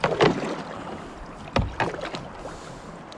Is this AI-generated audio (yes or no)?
no